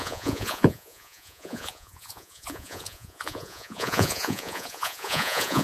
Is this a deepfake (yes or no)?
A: yes